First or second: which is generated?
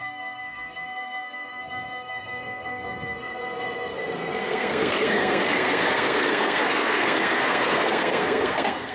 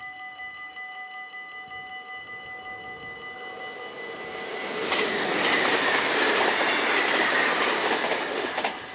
first